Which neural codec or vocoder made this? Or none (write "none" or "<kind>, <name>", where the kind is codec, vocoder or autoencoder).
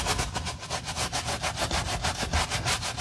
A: none